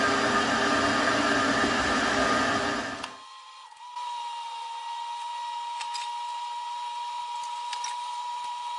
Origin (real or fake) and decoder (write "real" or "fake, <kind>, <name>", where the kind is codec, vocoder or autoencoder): real